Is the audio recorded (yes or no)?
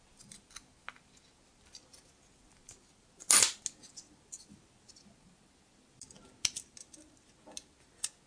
yes